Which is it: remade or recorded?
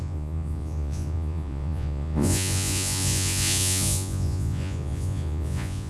remade